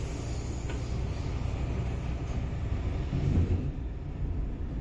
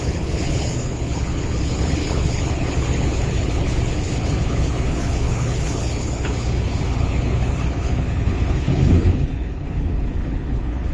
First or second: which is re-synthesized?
second